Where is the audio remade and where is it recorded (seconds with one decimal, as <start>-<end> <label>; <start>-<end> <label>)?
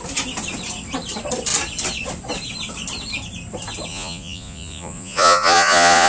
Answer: 0.0-3.9 recorded; 3.9-6.1 remade